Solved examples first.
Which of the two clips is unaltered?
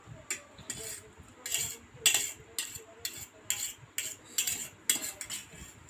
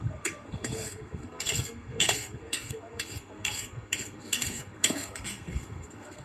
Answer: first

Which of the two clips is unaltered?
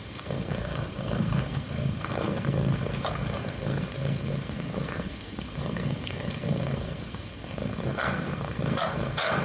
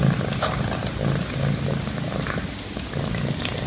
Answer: second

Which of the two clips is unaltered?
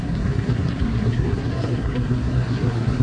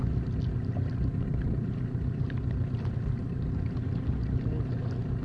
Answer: second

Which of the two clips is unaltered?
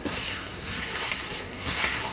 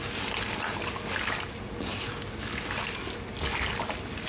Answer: second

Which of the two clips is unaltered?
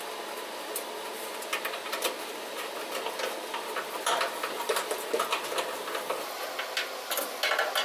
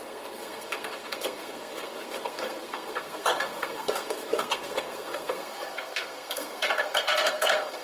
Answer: first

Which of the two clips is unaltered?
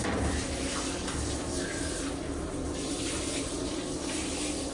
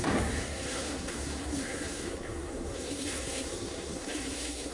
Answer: first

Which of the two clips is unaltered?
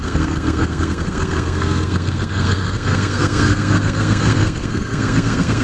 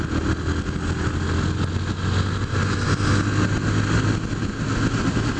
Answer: second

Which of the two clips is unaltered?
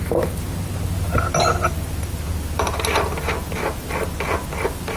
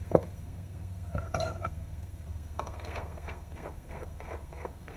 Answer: first